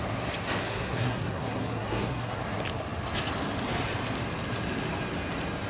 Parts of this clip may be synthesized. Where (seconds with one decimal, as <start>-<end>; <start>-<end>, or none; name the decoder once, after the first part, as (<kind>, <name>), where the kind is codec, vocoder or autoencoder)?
0.6-2.4 (codec, SNAC)